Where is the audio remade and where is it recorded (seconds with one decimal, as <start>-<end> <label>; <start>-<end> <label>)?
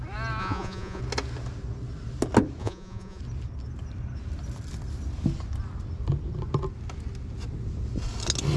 0.0-0.4 recorded; 0.4-1.0 remade; 1.0-2.6 recorded; 2.6-3.2 remade; 3.2-8.6 recorded